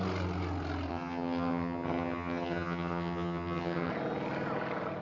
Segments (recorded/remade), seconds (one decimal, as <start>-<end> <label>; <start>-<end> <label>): 0.0-0.9 recorded; 0.9-3.9 remade; 3.9-5.0 recorded